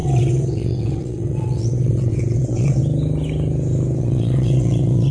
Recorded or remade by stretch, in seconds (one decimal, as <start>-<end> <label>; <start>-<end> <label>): 0.0-2.8 remade; 2.8-4.0 recorded; 4.0-5.1 remade